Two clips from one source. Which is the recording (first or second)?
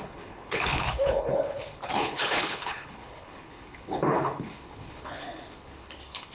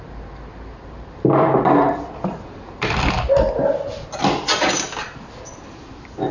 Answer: second